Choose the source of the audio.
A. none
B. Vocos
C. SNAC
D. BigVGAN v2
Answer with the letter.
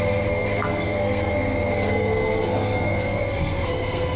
C